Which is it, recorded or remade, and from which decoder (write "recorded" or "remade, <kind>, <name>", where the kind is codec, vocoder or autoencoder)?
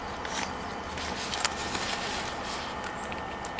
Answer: recorded